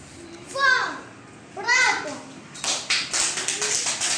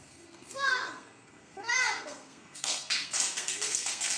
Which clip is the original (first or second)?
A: first